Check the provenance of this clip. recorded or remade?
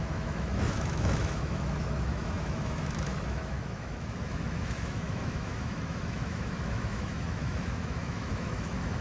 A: remade